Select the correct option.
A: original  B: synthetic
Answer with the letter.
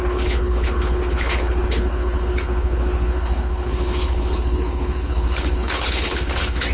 B